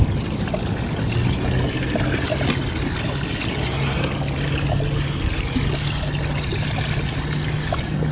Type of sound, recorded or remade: recorded